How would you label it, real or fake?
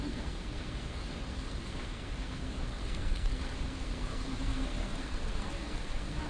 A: fake